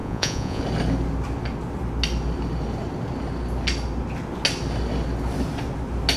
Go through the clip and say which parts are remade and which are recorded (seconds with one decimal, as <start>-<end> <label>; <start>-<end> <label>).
0.0-0.6 remade; 0.6-6.2 recorded